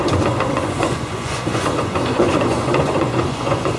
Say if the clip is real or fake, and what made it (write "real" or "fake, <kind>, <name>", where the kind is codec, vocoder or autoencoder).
fake, vocoder, Vocos